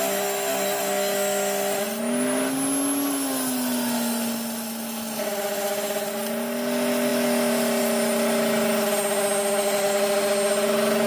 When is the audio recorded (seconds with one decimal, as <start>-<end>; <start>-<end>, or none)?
0.0-11.1